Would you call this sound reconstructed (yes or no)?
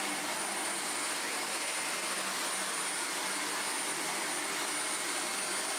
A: no